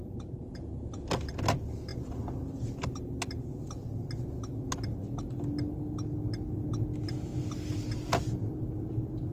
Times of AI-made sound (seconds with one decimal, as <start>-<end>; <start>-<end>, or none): 0.0-0.7